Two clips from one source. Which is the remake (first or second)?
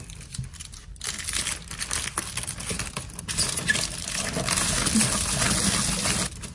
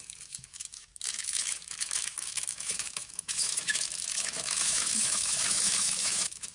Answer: second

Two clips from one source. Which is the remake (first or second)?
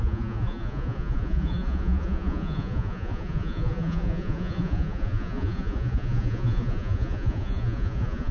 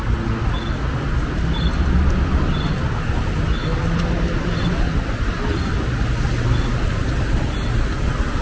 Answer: first